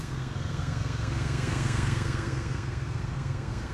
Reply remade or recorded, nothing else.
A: remade